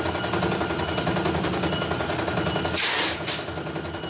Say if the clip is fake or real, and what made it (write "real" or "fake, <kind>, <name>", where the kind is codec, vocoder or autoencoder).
real